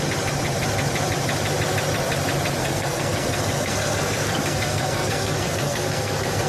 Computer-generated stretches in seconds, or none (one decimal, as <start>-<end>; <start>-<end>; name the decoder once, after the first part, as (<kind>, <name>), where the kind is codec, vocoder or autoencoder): 2.6-6.5 (codec, SNAC)